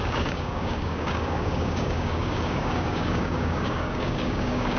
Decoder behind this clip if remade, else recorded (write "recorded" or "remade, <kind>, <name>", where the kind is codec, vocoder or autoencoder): remade, codec, DAC